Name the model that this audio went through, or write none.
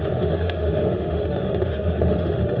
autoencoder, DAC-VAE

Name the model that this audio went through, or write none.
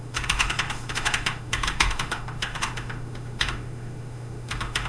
autoencoder, DAC-VAE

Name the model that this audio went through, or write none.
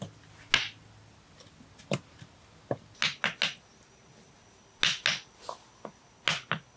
none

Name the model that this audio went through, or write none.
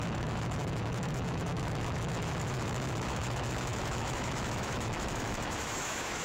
autoencoder, DAC-VAE